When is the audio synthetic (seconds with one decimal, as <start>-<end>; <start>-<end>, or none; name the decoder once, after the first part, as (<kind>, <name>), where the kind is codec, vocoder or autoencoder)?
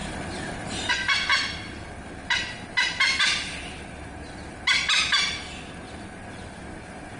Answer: 0.0-0.9 (vocoder, BigVGAN v2)